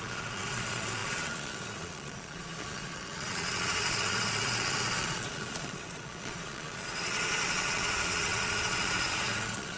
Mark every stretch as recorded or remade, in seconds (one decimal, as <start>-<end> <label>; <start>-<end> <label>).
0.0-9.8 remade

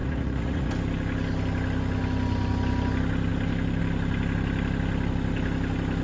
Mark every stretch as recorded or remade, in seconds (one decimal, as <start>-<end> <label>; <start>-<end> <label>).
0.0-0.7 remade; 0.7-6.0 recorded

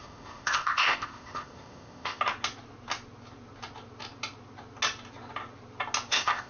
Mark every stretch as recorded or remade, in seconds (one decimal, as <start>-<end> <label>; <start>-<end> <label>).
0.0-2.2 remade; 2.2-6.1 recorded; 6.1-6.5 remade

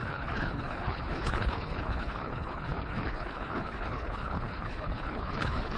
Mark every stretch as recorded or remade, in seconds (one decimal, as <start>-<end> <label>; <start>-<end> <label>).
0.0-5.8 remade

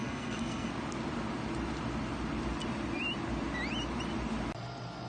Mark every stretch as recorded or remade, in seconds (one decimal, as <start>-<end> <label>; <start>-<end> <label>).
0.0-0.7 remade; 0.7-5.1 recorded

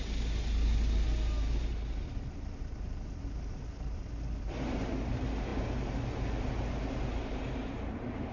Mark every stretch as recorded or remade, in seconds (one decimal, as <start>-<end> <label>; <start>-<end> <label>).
0.0-8.3 recorded

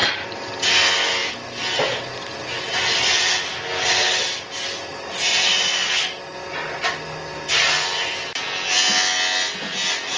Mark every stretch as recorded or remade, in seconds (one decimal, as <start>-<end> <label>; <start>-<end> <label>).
0.0-10.2 recorded